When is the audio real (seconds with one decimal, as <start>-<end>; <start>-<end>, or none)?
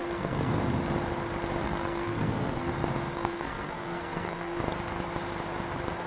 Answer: 0.5-1.6; 2.7-3.1; 4.6-6.1